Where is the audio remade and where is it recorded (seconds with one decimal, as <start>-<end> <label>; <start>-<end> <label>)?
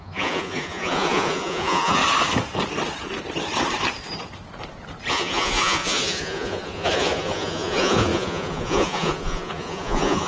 0.0-2.0 remade; 2.0-5.1 recorded; 5.1-10.3 remade